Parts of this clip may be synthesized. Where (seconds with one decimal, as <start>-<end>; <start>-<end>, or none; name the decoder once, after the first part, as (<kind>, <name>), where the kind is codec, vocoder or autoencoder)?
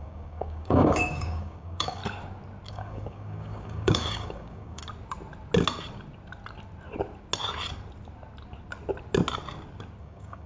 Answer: 0.0-2.0 (codec, DAC); 2.7-4.8; 10.0-10.5